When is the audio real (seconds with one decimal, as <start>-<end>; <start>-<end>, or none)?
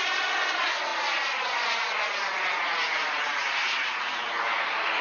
0.0-5.0